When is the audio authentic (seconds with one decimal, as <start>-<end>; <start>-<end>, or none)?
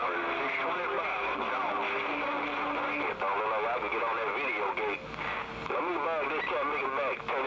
0.0-7.5